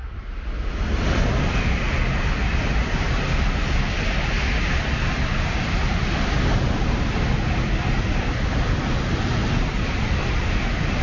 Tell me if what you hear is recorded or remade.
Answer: recorded